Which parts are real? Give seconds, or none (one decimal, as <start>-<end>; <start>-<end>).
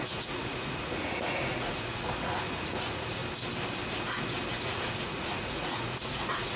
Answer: 3.2-4.6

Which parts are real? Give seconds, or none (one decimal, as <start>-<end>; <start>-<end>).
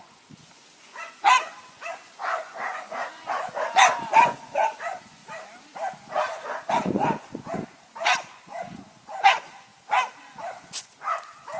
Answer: 5.2-6.3; 9.7-10.2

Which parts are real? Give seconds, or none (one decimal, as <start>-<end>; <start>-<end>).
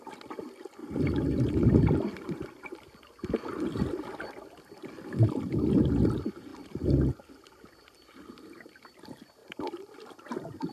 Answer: 0.0-0.8; 3.0-9.4; 10.1-10.7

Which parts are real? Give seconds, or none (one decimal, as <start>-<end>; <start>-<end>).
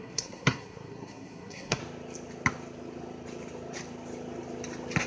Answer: 1.8-5.1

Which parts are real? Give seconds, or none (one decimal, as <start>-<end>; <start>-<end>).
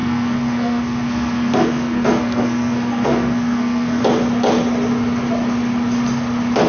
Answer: 4.0-6.7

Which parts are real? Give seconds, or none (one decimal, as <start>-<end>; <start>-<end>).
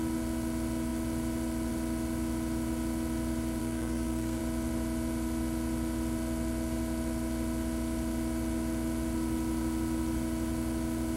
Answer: 0.0-3.6; 4.4-11.2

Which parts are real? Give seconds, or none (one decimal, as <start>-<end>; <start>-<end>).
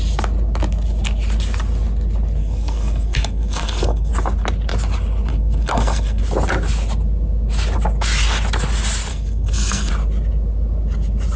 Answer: 0.0-2.4; 4.1-5.3; 6.2-9.1; 9.9-11.4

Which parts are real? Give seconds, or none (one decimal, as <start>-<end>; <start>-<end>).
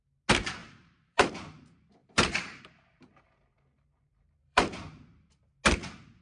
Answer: 0.0-0.6; 1.3-2.0; 2.6-3.5; 4.7-6.2